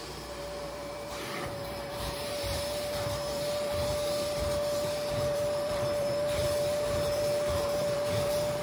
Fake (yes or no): yes